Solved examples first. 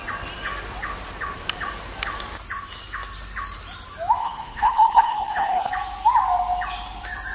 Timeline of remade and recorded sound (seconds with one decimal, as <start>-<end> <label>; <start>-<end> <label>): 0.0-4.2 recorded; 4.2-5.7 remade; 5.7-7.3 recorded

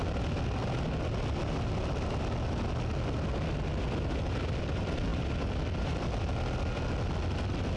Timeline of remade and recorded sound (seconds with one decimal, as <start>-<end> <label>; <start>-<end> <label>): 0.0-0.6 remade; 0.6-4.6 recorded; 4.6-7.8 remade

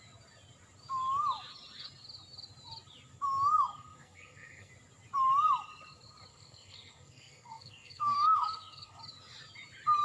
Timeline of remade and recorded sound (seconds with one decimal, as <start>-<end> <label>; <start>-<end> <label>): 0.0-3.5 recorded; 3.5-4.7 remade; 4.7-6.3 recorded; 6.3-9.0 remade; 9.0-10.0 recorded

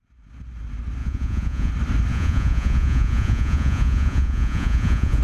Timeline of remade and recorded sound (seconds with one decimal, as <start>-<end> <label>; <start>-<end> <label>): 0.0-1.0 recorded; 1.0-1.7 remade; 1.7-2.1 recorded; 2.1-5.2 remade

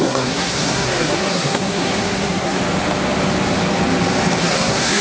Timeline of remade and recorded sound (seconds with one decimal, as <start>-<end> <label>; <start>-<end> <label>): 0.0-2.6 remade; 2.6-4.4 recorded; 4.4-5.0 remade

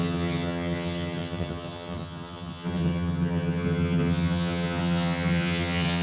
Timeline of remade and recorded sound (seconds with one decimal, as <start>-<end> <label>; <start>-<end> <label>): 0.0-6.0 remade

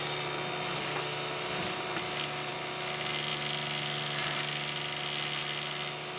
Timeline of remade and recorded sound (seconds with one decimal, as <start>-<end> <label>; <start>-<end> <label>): 0.0-6.2 recorded